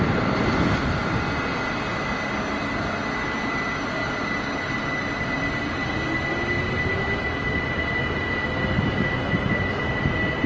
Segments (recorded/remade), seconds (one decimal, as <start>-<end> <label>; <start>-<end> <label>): 0.0-10.5 recorded